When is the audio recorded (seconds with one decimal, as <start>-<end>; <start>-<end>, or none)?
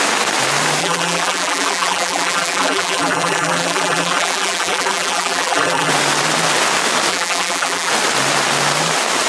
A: 0.0-0.8; 5.9-7.1; 7.9-9.3